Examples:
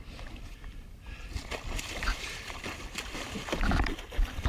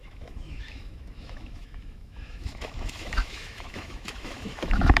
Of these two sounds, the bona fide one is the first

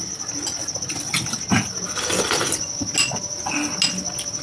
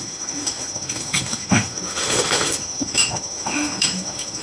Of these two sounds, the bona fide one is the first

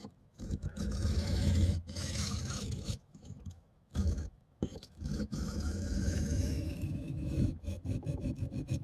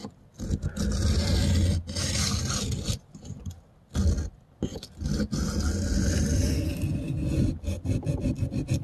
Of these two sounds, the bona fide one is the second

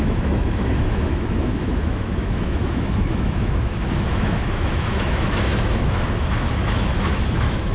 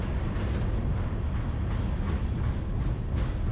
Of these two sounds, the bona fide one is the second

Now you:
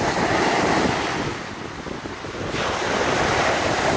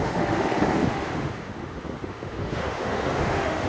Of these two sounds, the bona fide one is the first